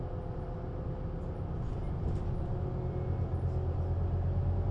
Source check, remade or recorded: recorded